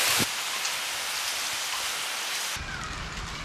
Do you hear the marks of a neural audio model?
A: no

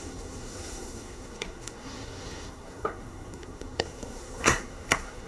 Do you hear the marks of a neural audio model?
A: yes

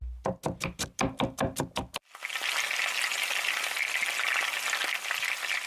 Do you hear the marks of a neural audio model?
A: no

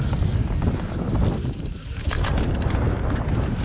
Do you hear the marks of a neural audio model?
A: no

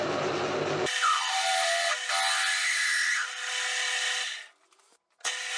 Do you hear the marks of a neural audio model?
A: no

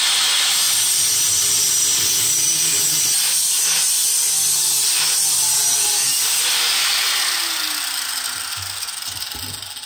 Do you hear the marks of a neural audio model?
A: no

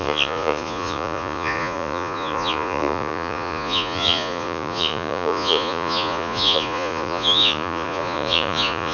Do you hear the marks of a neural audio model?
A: yes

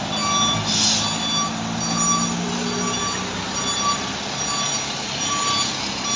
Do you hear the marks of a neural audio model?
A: no